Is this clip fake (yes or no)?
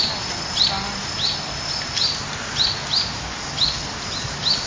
no